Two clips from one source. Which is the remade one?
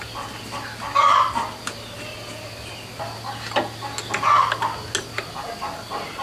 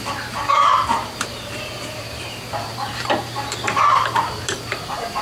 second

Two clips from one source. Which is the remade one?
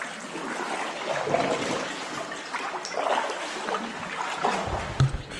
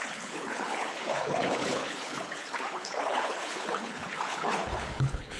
second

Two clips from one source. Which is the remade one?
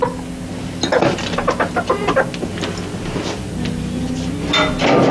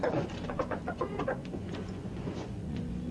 second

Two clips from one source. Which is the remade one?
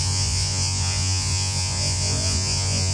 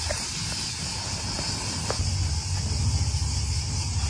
first